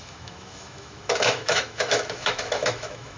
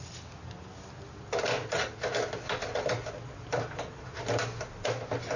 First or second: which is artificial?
first